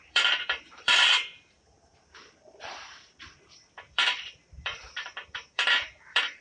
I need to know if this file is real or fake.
fake